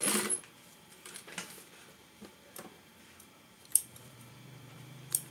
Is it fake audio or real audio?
fake